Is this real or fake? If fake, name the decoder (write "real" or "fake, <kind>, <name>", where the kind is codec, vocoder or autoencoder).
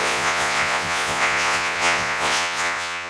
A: fake, vocoder, Vocos